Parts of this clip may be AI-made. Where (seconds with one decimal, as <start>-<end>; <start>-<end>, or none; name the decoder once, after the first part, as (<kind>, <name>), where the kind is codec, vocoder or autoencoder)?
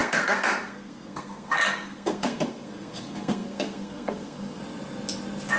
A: 0.0-4.6 (codec, SNAC)